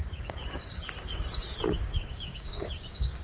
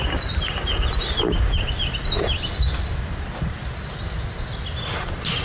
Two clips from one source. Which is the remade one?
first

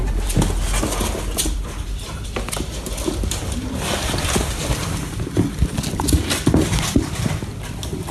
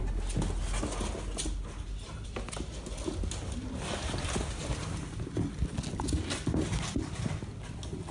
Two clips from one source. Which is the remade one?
first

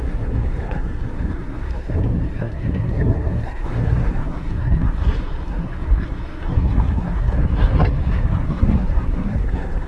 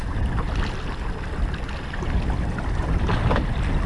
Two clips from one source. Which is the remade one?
first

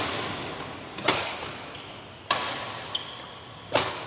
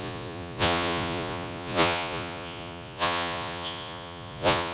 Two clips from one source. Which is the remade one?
second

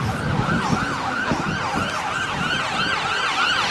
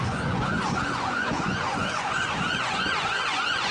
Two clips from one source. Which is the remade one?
second